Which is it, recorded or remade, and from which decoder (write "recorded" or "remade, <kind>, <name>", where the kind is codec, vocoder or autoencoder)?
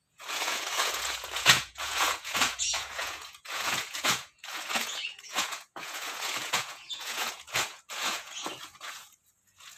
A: remade, vocoder, Vocos